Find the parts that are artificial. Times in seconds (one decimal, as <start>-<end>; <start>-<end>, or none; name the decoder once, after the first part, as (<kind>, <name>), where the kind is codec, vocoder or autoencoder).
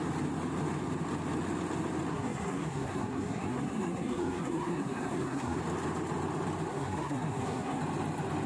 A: 2.1-5.6 (codec, SNAC); 6.7-7.8